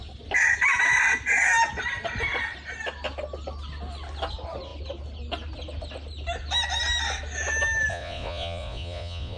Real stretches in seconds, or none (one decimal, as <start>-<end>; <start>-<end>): 0.0-7.9

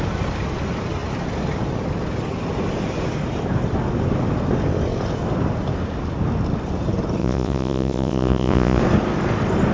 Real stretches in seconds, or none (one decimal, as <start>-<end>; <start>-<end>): 0.0-7.2; 8.8-9.7

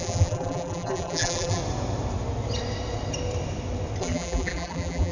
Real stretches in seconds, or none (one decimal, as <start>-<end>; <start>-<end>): 1.6-4.0

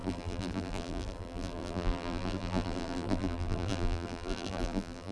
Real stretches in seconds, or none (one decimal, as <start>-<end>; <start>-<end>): none

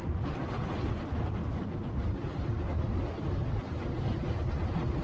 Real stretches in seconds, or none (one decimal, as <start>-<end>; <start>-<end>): 0.0-5.0

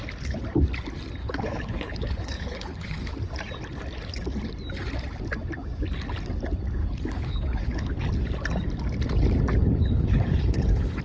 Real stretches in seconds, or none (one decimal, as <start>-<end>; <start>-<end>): 0.0-1.2; 3.1-6.8; 8.1-9.6